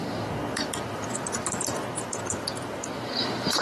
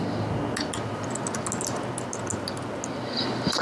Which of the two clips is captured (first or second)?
second